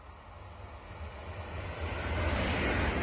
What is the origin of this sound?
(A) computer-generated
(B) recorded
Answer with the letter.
B